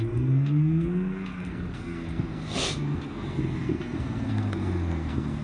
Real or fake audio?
fake